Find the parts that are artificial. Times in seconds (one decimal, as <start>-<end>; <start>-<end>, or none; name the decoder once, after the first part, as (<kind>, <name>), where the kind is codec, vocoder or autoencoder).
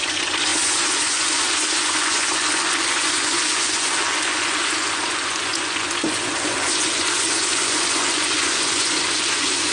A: 0.0-9.7 (vocoder, Vocos)